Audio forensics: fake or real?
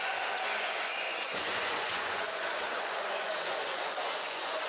fake